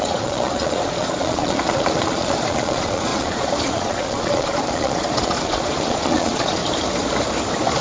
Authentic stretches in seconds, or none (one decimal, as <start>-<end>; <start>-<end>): 6.6-7.8